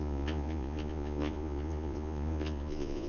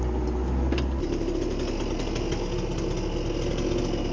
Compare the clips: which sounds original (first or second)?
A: second